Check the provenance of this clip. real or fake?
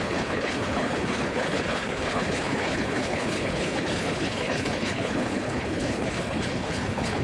fake